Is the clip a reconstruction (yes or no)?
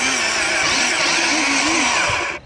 no